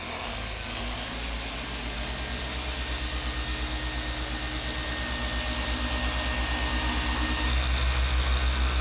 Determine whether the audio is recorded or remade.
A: recorded